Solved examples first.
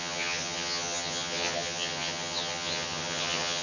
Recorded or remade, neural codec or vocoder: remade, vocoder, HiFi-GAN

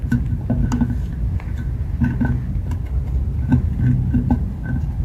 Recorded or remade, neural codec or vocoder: recorded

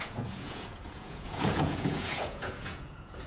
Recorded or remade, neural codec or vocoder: remade, vocoder, Vocos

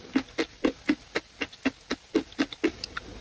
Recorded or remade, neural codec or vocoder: recorded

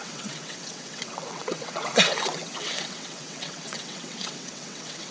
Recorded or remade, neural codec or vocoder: remade, vocoder, WaveNeXt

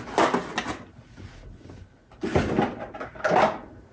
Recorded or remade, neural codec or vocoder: recorded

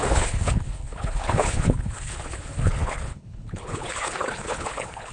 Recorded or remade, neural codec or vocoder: remade, codec, HILCodec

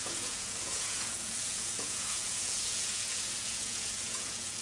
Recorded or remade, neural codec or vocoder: remade, vocoder, Vocos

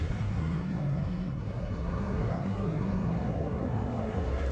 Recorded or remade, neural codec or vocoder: remade, codec, SNAC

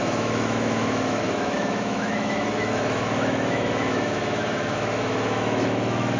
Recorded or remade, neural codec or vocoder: remade, autoencoder, DAC-VAE